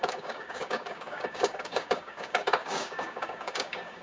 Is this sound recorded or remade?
remade